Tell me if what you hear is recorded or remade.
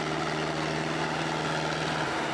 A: recorded